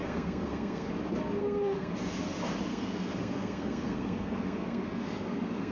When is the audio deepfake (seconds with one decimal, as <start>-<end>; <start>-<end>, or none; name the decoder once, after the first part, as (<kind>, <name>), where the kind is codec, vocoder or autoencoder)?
0.0-0.9 (codec, SNAC); 1.4-1.9; 2.7-5.7